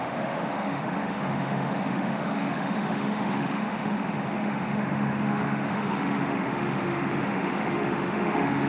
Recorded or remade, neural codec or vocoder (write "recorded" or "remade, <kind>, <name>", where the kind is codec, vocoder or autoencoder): remade, autoencoder, DAC-VAE